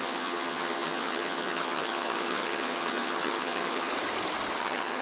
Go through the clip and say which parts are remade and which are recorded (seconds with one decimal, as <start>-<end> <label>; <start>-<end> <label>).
0.0-3.9 remade; 3.9-4.6 recorded; 4.6-5.0 remade